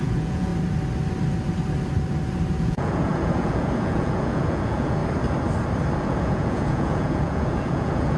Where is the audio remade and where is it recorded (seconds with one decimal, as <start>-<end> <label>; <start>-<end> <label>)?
0.0-0.5 remade; 0.5-2.6 recorded; 2.6-5.0 remade; 5.0-6.0 recorded; 6.0-8.2 remade